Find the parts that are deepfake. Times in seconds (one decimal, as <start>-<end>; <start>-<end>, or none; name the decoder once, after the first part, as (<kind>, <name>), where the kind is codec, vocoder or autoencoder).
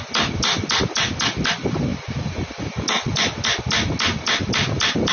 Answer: none